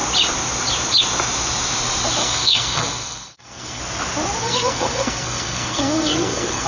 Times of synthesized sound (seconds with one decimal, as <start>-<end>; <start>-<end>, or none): 2.2-3.8; 4.4-6.7